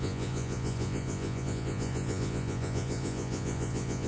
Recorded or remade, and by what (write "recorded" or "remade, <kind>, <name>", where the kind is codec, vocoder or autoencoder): remade, vocoder, Vocos